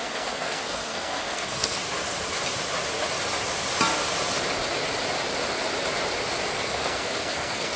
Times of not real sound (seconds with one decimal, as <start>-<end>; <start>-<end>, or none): 0.0-1.8; 6.5-7.8